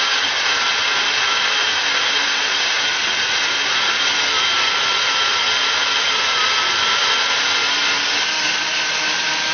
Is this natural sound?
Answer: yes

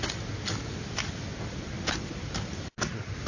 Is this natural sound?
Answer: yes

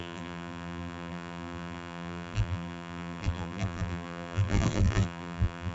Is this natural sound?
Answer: no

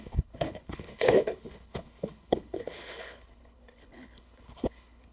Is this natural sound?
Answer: no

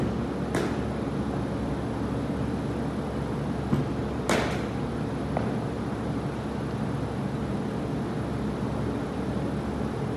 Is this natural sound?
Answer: yes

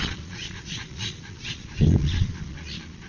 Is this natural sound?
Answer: no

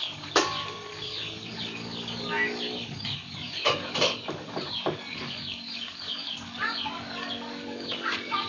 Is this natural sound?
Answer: no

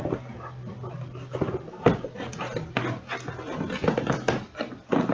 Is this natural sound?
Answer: yes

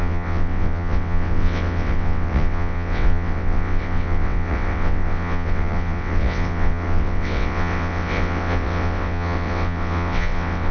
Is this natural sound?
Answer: no